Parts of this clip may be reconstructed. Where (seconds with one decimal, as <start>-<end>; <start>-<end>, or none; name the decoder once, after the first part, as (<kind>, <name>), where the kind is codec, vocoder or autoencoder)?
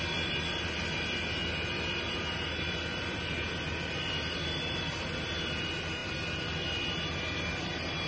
none